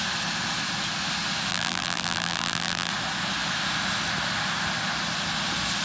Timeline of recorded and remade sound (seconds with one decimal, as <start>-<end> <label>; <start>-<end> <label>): 0.0-1.5 recorded; 1.5-2.9 remade; 2.9-5.8 recorded